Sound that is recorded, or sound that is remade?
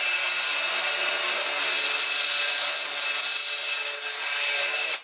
recorded